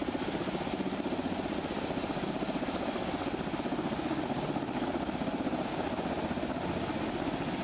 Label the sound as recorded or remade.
recorded